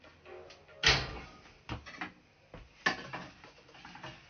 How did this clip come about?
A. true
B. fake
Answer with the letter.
A